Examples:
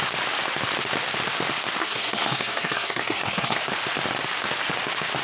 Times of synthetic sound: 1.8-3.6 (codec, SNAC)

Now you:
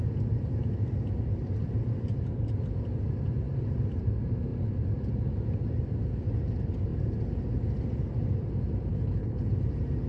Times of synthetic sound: 8.9-9.5 (codec, HILCodec)

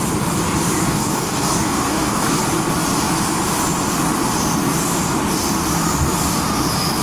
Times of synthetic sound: 0.8-2.4 (codec, DAC)

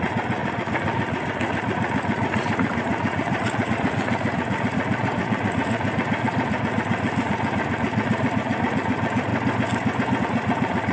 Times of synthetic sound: 0.0-9.3 (vocoder, Vocos); 10.2-10.9

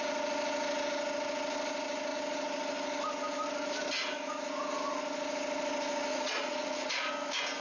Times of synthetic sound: 6.1-7.1 (vocoder, Vocos)

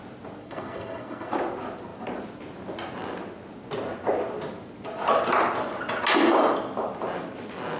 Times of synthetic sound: 0.4-1.3 (codec, SNAC)

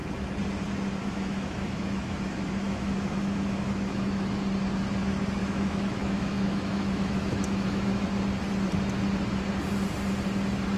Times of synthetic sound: 1.0-4.4 (autoencoder, DAC-VAE); 5.4-8.1